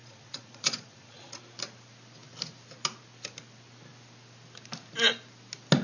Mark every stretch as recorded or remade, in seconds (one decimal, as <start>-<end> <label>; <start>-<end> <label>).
0.0-1.4 remade; 1.4-5.8 recorded